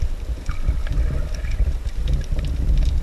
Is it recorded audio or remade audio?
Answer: recorded